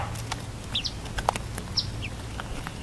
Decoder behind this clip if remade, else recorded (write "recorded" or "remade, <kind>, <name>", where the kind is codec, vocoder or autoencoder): recorded